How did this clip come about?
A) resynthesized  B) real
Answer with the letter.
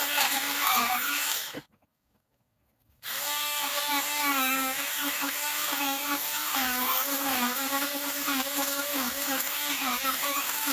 A